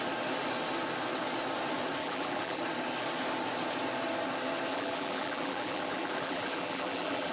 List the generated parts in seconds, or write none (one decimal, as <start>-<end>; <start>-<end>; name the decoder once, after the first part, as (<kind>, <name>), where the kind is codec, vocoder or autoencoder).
2.0-2.6 (vocoder, BigVGAN v2); 4.7-7.3